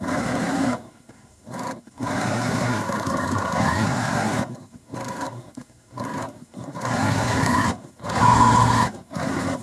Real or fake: fake